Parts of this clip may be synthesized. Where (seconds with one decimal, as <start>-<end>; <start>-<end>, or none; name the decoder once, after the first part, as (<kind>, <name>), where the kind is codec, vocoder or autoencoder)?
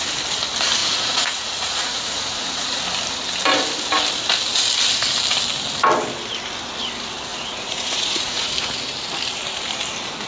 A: 0.8-2.8 (vocoder, Vocos); 7.3-8.5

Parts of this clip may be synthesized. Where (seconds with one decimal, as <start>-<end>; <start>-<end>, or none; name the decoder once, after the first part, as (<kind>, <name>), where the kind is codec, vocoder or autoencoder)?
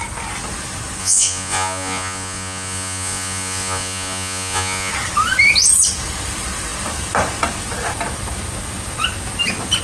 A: 1.0-4.9 (vocoder, Vocos)